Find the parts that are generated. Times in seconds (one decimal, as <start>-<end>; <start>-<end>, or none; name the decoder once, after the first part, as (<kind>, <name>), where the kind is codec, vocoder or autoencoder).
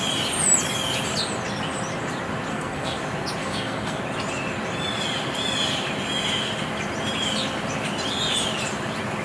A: 2.5-3.0 (codec, SNAC); 3.4-4.0